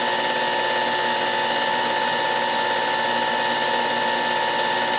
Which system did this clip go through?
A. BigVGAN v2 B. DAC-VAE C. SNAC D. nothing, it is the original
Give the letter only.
D